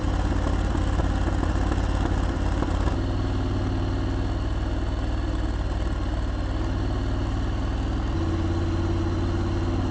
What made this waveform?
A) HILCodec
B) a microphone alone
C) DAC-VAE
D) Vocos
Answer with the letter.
B